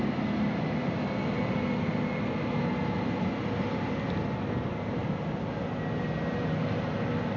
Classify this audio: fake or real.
real